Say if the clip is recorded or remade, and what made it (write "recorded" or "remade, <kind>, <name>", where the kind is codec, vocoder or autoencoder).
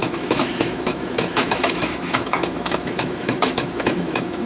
remade, autoencoder, DAC-VAE